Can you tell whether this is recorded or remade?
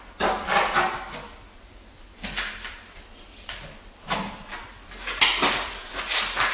recorded